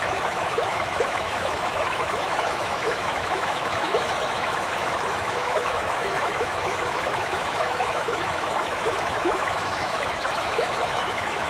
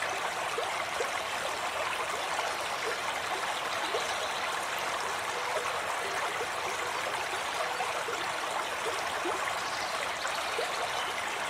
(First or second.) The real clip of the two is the second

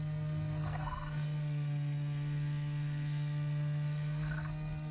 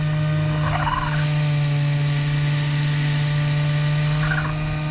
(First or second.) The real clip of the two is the second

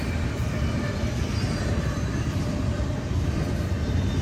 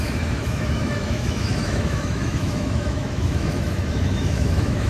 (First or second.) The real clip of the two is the first